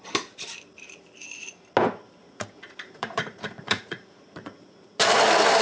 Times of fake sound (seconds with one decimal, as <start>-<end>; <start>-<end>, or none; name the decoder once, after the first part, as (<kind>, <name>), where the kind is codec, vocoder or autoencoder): 2.2-5.0 (vocoder, Vocos)